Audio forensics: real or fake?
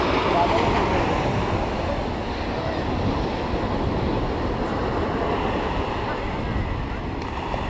real